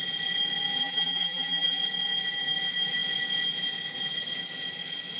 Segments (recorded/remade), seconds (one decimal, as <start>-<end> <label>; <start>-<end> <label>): 0.0-0.8 recorded; 0.8-1.8 remade; 1.8-5.2 recorded